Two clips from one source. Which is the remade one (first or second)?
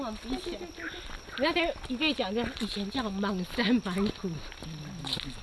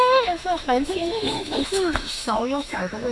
second